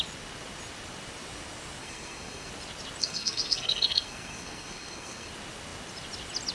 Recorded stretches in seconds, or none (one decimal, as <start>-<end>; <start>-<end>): 0.0-1.8; 2.5-3.0; 5.3-6.5